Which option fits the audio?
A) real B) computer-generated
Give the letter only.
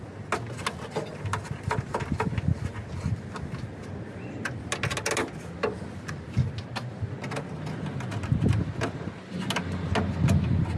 A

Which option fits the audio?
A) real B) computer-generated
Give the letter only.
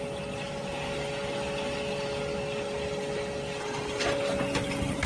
A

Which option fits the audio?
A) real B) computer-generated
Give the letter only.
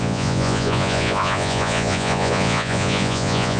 B